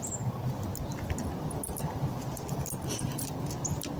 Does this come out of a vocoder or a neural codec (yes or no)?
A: no